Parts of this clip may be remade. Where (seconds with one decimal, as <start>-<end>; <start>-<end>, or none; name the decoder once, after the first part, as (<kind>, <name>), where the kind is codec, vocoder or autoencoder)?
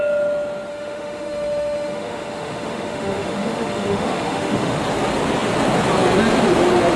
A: 0.7-4.8 (autoencoder, DAC-VAE)